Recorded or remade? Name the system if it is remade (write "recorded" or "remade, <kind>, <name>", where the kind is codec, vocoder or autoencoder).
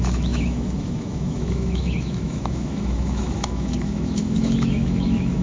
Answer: remade, autoencoder, DAC-VAE